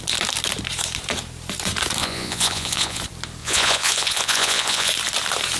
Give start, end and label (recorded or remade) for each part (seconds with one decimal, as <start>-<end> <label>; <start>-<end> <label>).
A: 0.0-2.0 recorded; 2.0-3.0 remade; 3.0-3.4 recorded; 3.4-4.9 remade; 4.9-5.6 recorded